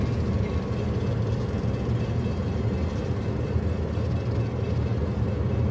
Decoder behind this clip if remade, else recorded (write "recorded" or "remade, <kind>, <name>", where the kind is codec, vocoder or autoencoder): recorded